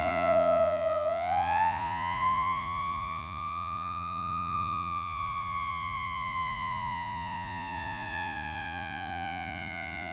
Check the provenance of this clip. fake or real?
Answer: fake